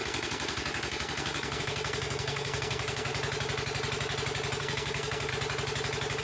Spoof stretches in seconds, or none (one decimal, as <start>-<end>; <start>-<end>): 0.0-3.1; 4.6-5.3

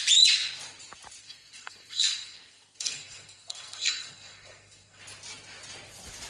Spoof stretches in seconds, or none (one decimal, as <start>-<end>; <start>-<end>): 1.2-5.0

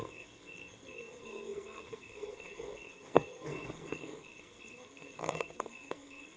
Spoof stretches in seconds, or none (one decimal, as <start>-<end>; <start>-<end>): 0.0-6.4

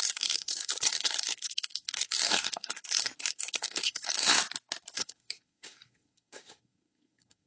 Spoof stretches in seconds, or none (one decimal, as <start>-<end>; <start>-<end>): 0.0-4.4; 4.9-7.5

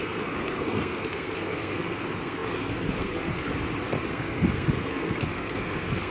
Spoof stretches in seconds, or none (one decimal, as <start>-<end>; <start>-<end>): 0.0-3.5; 4.1-6.1

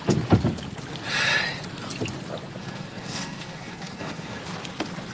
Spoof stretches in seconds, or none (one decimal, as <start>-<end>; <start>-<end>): 2.6-4.4

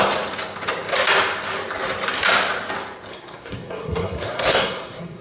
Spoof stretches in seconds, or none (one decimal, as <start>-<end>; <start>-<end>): 3.1-5.2

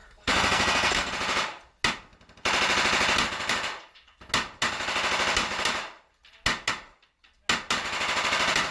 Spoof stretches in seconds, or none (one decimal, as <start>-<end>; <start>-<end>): 0.0-1.1